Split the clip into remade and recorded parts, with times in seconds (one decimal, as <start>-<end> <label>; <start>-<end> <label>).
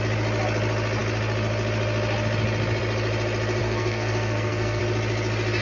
0.0-3.6 recorded; 3.6-4.8 remade; 4.8-5.6 recorded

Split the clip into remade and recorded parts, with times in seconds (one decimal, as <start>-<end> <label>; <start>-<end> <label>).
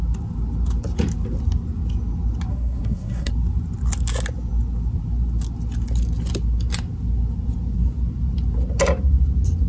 0.0-2.5 recorded; 2.5-3.3 remade; 3.3-9.7 recorded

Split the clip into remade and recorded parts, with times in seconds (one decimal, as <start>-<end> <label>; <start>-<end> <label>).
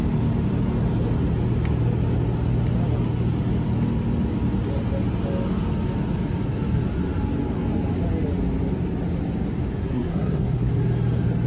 0.0-9.8 recorded; 9.8-10.7 remade; 10.7-11.5 recorded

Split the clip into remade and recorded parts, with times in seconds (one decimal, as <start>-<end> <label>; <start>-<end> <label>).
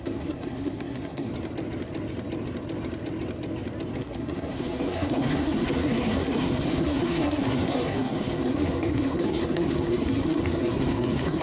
0.0-1.3 remade; 1.3-4.0 recorded; 4.0-11.4 remade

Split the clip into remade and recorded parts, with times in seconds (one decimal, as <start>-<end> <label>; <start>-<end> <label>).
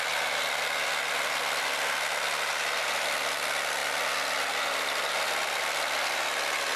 0.0-6.8 recorded